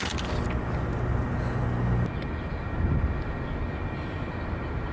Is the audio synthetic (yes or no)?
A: no